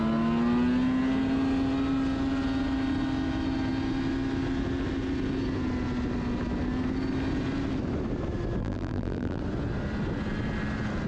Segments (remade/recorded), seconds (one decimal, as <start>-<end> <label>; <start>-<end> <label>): 0.0-8.6 recorded; 8.6-9.4 remade; 9.4-11.1 recorded